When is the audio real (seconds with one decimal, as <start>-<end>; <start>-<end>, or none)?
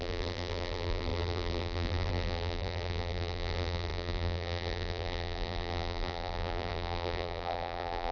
none